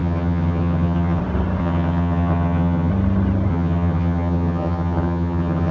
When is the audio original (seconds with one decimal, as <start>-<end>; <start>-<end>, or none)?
1.2-1.6; 2.9-3.5